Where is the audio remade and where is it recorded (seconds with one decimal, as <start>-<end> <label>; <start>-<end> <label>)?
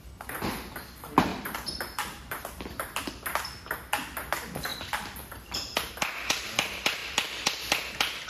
0.0-1.3 recorded; 1.3-3.1 remade; 3.1-4.7 recorded; 4.7-5.9 remade; 5.9-8.3 recorded